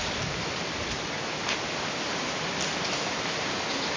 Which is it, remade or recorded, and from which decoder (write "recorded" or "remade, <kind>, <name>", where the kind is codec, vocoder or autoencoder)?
recorded